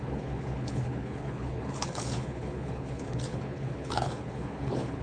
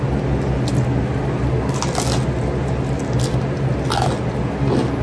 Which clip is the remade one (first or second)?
first